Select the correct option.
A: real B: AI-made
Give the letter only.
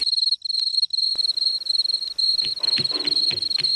A